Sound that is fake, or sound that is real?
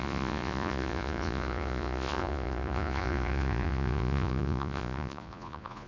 fake